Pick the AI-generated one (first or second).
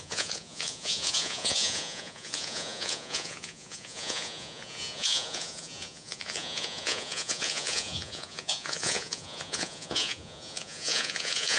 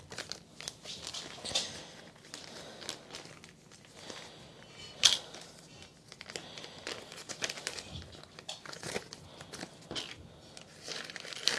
first